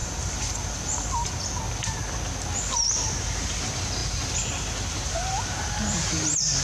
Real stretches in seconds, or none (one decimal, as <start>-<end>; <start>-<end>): 1.6-6.6